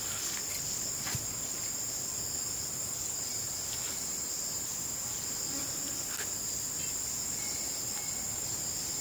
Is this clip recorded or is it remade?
recorded